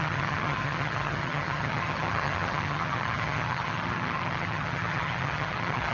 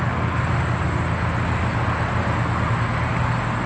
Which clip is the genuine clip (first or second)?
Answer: second